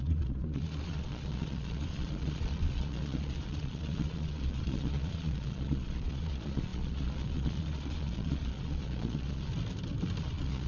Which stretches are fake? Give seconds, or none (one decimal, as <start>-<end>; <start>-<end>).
0.0-9.5; 10.2-10.7